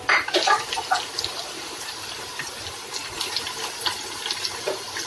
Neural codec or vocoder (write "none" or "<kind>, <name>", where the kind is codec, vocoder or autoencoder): none